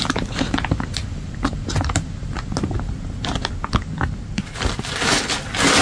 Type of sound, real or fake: real